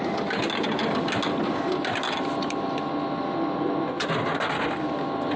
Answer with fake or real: real